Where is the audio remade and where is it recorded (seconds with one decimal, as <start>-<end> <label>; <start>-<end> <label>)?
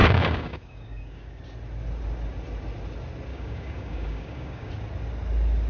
0.0-1.4 remade; 1.4-3.3 recorded; 3.3-4.7 remade; 4.7-5.7 recorded